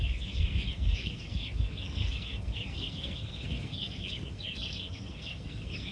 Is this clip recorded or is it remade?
remade